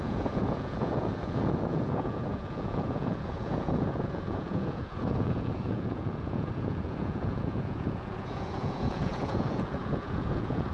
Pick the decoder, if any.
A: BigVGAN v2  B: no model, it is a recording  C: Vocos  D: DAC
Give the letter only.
C